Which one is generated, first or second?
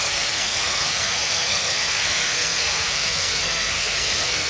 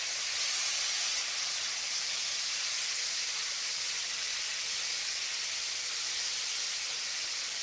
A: first